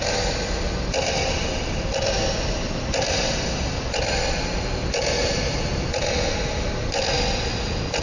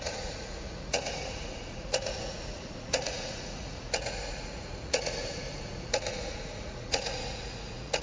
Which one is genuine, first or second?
first